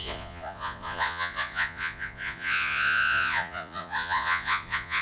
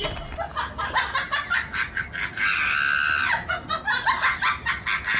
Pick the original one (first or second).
second